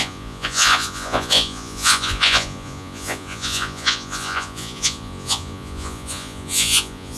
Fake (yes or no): yes